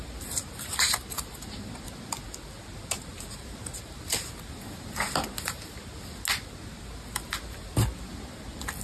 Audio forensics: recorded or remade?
recorded